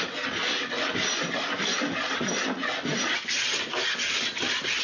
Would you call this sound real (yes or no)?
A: yes